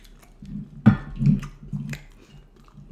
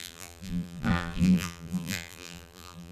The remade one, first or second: second